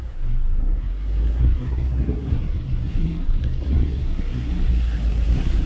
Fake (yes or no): yes